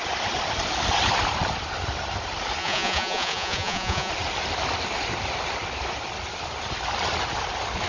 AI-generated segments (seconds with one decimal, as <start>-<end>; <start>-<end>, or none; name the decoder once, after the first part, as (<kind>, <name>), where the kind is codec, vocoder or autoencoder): 2.6-4.1 (vocoder, Vocos)